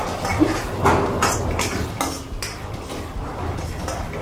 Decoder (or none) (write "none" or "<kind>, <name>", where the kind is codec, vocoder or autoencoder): none